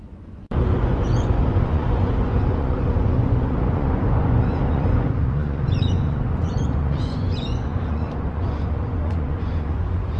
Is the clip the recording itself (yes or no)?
no